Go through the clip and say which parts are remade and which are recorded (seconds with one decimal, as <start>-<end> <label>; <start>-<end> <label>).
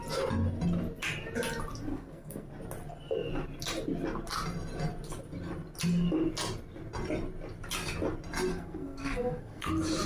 0.0-1.9 recorded; 1.9-2.5 remade; 2.5-8.5 recorded; 8.5-9.7 remade; 9.7-10.1 recorded